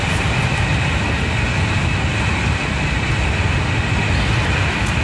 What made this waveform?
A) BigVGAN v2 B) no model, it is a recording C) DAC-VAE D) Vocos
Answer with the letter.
B